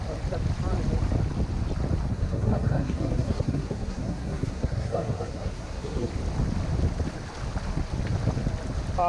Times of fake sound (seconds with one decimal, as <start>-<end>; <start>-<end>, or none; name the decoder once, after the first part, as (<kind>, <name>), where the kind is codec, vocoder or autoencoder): 2.1-6.1 (codec, SNAC)